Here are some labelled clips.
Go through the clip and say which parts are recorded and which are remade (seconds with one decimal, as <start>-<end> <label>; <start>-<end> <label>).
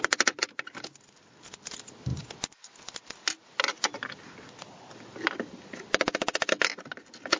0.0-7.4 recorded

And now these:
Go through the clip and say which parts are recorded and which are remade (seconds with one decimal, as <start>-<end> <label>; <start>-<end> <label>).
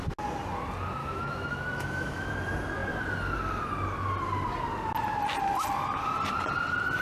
0.0-1.0 recorded; 1.0-2.3 remade; 2.3-7.0 recorded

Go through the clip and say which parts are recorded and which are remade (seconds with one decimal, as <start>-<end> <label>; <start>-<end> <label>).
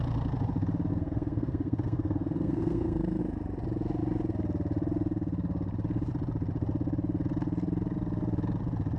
0.0-0.9 recorded; 0.9-3.2 remade; 3.2-9.0 recorded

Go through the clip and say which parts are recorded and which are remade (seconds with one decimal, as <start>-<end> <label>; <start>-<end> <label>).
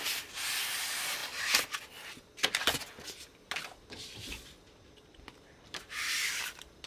0.0-6.9 recorded